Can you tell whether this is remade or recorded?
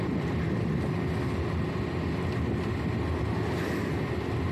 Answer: recorded